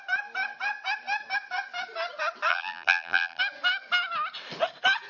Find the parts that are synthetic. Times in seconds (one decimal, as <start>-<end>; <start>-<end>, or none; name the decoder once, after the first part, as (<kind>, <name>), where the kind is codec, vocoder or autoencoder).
2.5-3.4 (vocoder, BigVGAN v2)